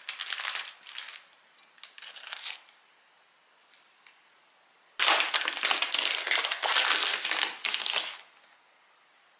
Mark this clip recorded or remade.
recorded